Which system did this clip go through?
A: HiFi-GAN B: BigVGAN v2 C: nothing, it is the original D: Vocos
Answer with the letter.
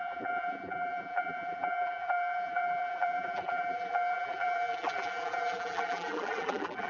B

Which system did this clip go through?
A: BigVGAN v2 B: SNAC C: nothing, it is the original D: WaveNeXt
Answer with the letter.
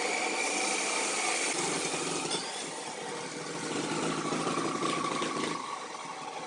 A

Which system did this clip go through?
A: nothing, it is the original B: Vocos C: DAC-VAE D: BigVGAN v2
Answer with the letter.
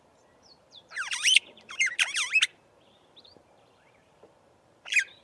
D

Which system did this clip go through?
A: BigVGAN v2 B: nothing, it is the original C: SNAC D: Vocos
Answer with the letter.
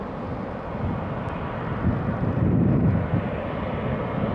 B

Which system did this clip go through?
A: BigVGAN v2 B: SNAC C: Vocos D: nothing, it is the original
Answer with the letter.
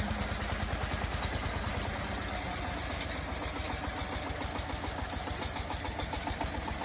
D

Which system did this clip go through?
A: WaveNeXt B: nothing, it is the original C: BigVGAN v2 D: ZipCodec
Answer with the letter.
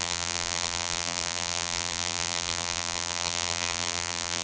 C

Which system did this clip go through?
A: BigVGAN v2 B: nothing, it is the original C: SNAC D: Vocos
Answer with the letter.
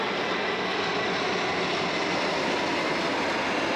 B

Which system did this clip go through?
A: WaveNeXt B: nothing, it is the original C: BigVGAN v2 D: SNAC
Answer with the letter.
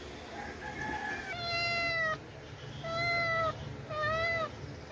B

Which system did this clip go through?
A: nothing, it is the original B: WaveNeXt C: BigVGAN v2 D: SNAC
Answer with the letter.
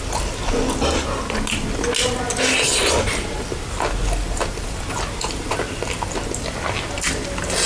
A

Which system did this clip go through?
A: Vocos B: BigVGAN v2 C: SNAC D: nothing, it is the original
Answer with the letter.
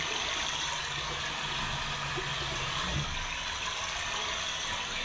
D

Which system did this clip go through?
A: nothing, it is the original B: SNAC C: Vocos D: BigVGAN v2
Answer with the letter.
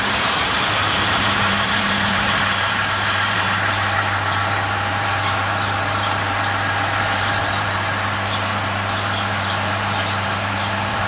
D